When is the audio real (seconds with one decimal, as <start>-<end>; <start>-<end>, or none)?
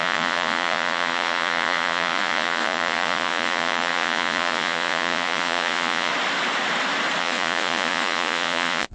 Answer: 6.1-7.2